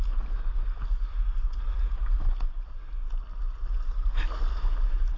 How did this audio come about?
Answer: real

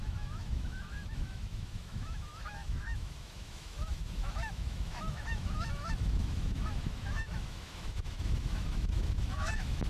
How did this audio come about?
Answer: fake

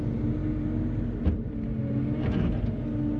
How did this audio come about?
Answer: real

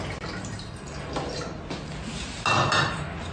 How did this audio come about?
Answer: real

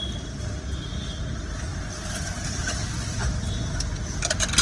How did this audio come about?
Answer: real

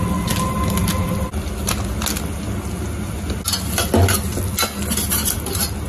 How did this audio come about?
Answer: real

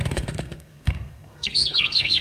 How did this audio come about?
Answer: fake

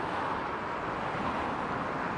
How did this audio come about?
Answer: real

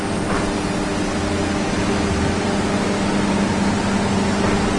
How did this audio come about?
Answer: real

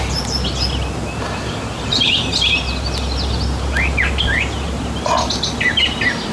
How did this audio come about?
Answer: real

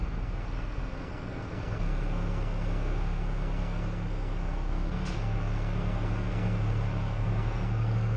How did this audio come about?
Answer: fake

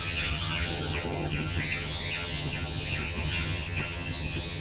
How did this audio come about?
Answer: fake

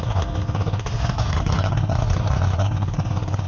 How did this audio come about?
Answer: fake